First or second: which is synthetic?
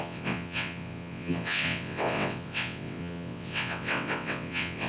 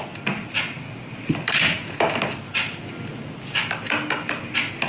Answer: first